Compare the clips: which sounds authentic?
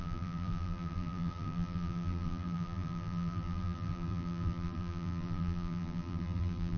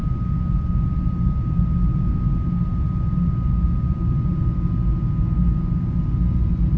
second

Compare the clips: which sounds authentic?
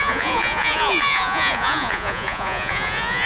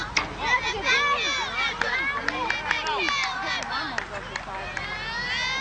second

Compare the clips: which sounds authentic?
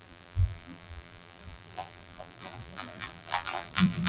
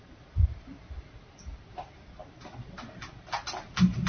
second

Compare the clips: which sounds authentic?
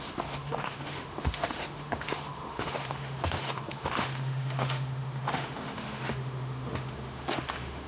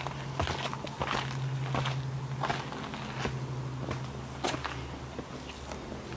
second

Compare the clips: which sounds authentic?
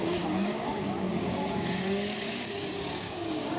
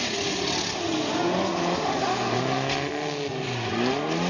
second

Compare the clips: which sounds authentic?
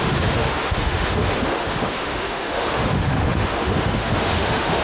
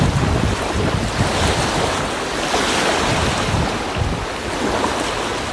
second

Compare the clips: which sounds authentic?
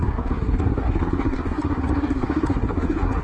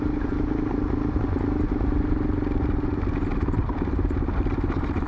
second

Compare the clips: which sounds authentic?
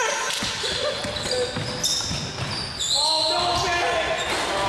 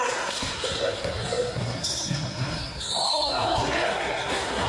first